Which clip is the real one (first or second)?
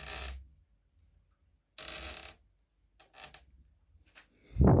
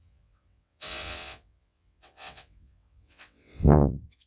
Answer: first